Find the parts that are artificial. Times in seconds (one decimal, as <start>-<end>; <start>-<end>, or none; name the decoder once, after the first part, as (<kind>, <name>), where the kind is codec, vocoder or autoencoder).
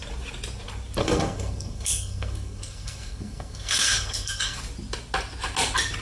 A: 1.0-4.6 (codec, SNAC)